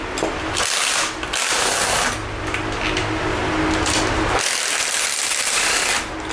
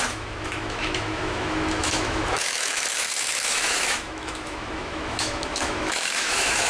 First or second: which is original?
first